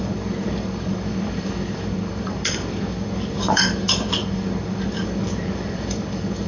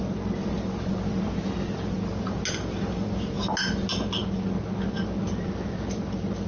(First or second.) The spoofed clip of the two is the first